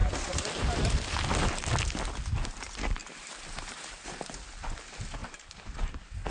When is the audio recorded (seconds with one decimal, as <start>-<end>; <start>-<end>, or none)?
0.9-3.0; 4.1-5.2

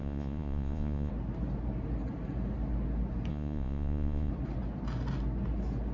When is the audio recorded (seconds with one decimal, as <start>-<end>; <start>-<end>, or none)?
1.1-3.3; 4.3-5.9

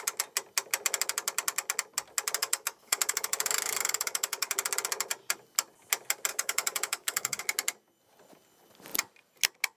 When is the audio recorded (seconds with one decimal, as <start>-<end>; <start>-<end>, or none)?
0.0-2.4; 4.5-6.3; 7.4-9.8

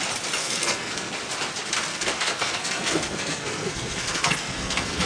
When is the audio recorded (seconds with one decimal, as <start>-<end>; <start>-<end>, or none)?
0.0-0.4; 1.1-1.9

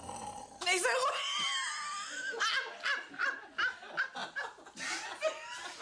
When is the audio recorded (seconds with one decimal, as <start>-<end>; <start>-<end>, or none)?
0.0-5.8

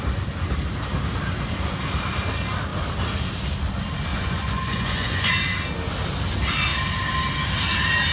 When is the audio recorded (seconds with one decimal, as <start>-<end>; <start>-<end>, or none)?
0.0-4.1; 5.3-8.1